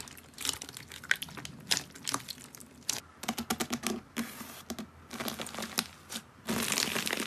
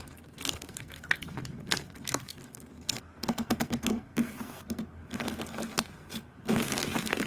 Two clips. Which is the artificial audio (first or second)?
second